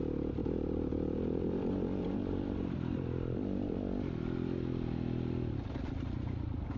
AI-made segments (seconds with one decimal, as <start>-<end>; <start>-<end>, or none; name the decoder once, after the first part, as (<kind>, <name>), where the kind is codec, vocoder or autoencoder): 0.4-3.8 (vocoder, BigVGAN v2)